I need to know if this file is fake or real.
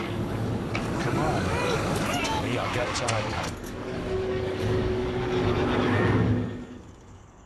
fake